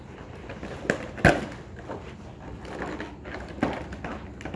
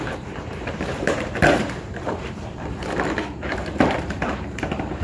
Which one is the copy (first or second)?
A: second